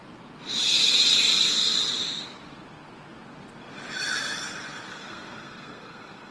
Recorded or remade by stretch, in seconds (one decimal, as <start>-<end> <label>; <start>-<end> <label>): 0.0-4.9 recorded; 4.9-6.3 remade